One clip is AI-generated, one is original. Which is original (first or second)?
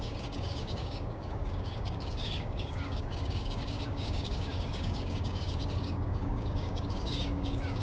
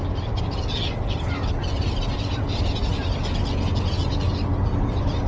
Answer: second